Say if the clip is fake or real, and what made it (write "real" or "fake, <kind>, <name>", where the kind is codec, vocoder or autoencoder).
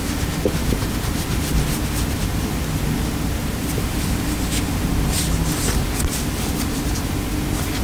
real